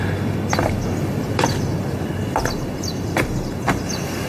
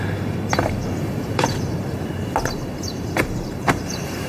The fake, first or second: second